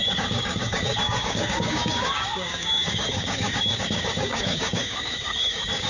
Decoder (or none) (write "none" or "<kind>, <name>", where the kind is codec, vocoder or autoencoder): codec, DAC